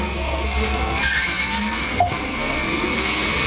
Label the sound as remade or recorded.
remade